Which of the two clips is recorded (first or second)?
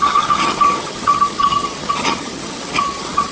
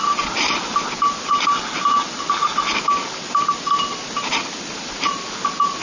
second